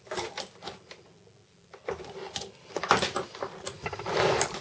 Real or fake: real